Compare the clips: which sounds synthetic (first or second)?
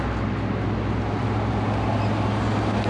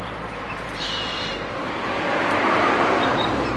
second